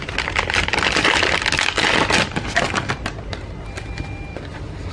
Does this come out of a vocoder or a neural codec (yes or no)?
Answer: no